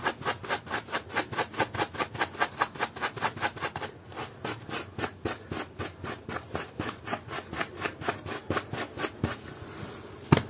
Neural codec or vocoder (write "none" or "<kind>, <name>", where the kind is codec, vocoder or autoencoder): none